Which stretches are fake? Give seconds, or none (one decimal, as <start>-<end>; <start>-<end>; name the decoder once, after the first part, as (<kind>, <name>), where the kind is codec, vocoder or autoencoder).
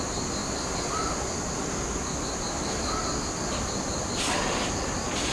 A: none